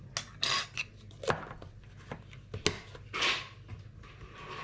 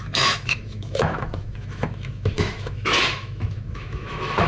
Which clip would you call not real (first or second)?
second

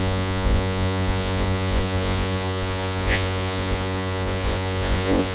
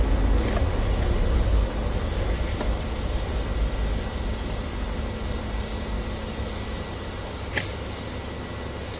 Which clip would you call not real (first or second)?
first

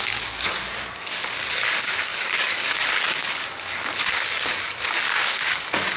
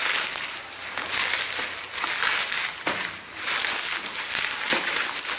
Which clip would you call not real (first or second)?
first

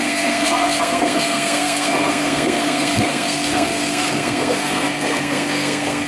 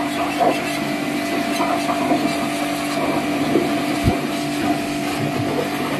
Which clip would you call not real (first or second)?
first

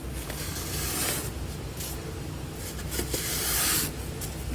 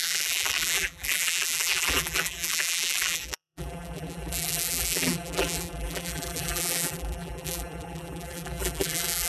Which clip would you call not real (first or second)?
second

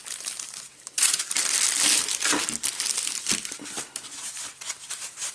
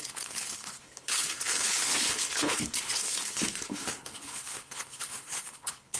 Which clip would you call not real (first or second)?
second